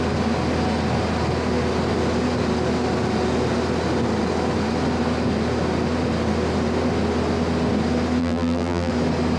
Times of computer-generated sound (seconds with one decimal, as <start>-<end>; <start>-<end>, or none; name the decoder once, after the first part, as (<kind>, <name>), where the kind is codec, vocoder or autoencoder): 8.2-8.9 (vocoder, BigVGAN v2)